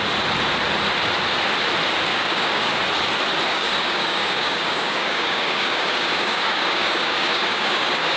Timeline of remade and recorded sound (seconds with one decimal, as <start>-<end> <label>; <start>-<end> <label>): 0.0-2.1 recorded; 2.1-2.8 remade; 2.8-3.5 recorded; 3.5-8.2 remade